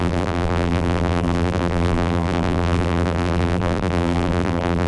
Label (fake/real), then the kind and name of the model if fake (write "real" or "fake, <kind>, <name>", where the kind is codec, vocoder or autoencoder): fake, vocoder, BigVGAN v2